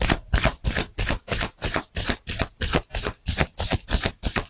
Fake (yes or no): no